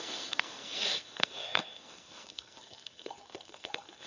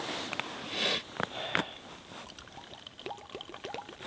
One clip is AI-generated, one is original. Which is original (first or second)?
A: second